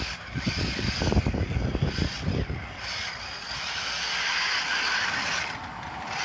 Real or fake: real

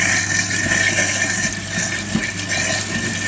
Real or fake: real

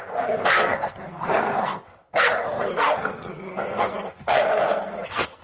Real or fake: fake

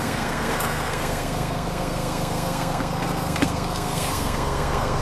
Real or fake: fake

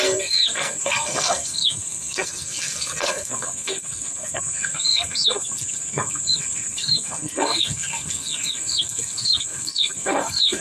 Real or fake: fake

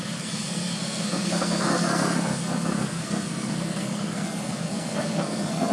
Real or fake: fake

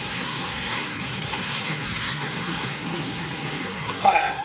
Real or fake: fake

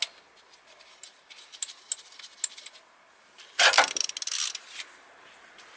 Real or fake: real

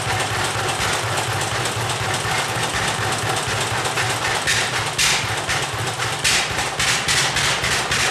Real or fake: real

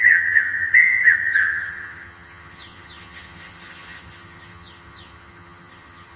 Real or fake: fake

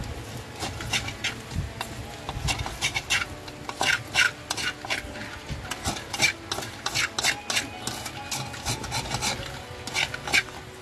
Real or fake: real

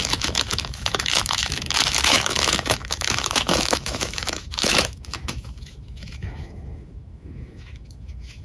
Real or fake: fake